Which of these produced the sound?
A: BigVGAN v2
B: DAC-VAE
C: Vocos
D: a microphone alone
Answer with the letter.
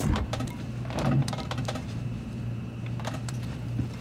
A